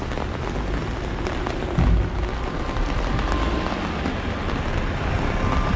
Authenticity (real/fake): real